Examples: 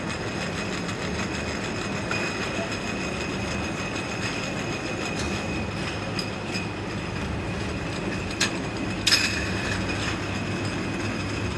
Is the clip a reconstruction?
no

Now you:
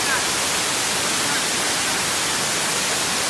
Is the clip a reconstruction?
no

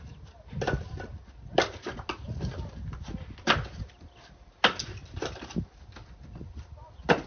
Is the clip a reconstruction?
no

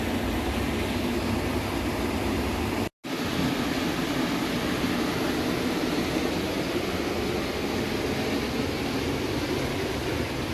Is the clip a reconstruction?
no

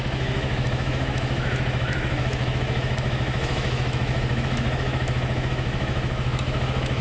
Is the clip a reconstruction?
yes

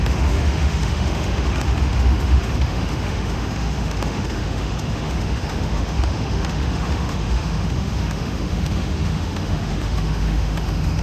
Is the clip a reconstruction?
yes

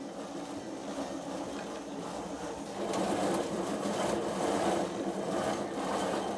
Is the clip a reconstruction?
no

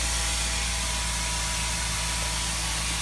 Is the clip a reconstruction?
no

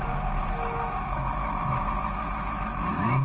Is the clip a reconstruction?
yes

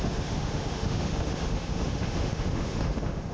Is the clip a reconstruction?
yes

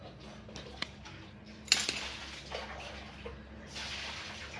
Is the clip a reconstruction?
no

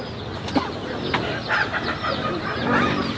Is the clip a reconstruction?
no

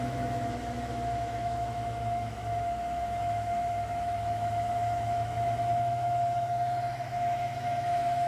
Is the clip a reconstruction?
yes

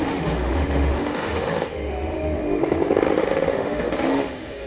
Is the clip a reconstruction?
yes